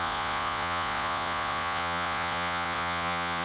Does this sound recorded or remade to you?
remade